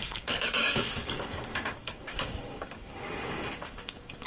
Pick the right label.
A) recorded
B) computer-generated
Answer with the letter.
B